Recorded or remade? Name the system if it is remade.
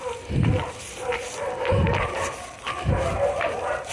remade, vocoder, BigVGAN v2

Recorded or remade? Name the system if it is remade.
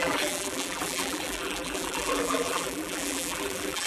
remade, vocoder, BigVGAN v2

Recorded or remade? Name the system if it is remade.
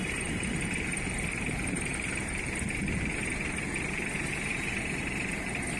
remade, vocoder, BigVGAN v2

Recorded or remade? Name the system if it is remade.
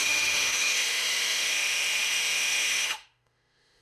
remade, autoencoder, DAC-VAE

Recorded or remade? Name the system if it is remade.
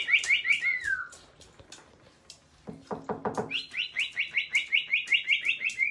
recorded